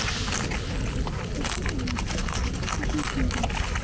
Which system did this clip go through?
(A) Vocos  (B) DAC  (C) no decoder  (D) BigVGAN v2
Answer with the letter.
C